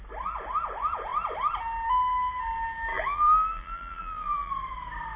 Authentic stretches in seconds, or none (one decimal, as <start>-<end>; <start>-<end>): 0.0-2.9; 4.5-5.2